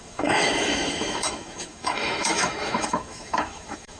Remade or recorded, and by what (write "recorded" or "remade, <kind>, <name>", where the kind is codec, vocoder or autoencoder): remade, autoencoder, DAC-VAE